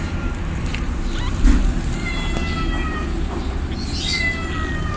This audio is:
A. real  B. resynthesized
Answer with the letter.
A